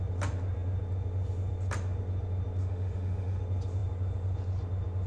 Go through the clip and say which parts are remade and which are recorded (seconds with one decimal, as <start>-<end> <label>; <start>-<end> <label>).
0.0-2.6 recorded; 2.6-3.4 remade; 3.4-5.1 recorded